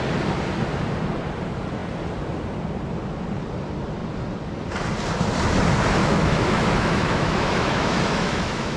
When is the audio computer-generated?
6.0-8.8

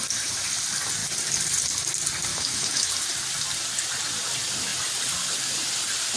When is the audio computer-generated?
2.3-2.9

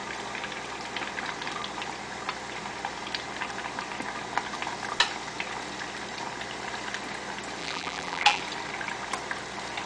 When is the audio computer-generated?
7.6-8.4

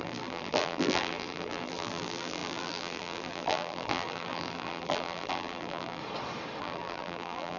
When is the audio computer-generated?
0.0-6.0; 6.6-7.6

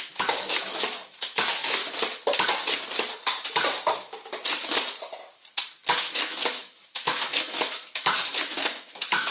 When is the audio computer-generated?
0.0-1.8; 6.0-9.3

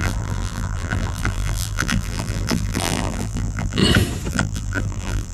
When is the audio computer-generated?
0.0-3.8; 4.3-5.3